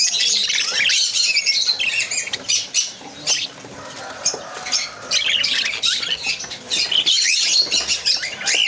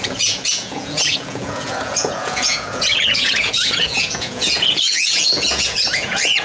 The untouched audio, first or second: first